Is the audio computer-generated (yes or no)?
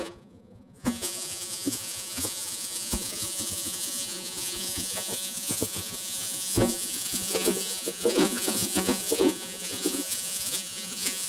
yes